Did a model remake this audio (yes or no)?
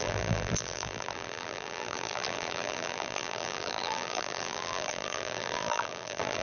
yes